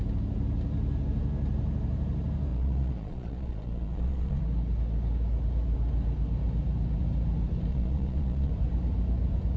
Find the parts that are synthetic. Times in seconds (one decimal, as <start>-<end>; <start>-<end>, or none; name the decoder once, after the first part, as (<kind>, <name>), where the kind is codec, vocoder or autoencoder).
2.5-4.4 (vocoder, Vocos); 7.7-8.5